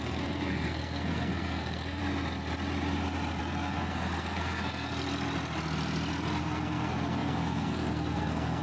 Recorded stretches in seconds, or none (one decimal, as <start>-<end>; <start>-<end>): 2.0-3.4; 4.9-6.4